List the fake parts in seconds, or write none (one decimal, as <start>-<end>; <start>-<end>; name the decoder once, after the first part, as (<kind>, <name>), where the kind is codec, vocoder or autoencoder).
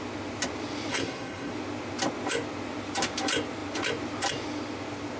0.9-1.5 (codec, SNAC)